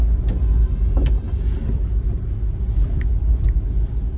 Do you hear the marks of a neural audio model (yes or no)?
no